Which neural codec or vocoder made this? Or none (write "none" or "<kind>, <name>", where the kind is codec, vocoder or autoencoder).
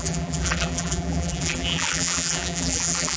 vocoder, BigVGAN v2